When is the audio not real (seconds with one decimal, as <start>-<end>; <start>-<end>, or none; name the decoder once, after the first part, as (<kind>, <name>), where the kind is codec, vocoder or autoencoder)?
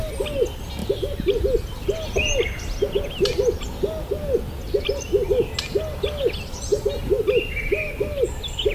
6.7-7.5 (vocoder, BigVGAN v2)